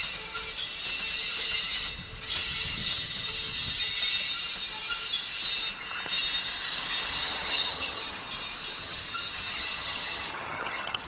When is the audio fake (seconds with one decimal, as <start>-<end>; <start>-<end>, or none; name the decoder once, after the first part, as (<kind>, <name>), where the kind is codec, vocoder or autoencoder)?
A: 2.8-3.3 (vocoder, HiFi-GAN); 7.2-8.2; 8.7-11.1